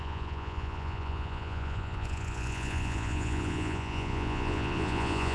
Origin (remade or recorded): remade